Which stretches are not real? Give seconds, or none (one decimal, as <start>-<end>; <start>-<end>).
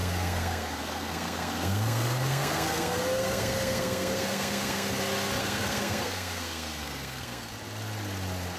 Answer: 0.0-5.0; 5.4-7.5